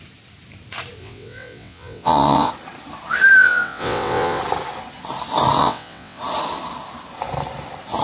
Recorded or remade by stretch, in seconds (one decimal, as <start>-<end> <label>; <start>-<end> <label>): 0.0-1.0 recorded; 1.0-2.5 remade; 2.5-3.4 recorded; 3.4-4.4 remade; 4.4-5.6 recorded; 5.6-6.2 remade; 6.2-8.0 recorded